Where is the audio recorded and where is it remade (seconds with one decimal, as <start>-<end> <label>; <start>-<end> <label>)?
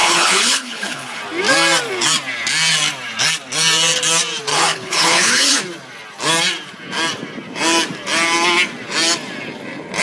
0.0-1.2 remade; 1.2-4.5 recorded; 4.5-5.6 remade; 5.6-10.0 recorded